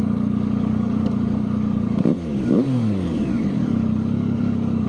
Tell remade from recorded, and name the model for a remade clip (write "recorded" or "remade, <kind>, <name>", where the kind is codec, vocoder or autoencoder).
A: remade, codec, DAC